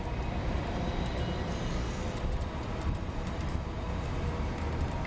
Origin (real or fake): real